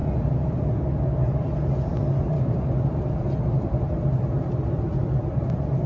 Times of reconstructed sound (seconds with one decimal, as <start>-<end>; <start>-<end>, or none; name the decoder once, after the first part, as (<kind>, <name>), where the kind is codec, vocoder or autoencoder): none